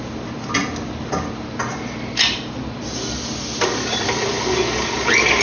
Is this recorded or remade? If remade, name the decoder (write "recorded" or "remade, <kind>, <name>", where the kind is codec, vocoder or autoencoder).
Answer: recorded